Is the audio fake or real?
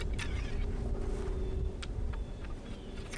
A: real